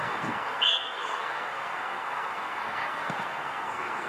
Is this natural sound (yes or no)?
no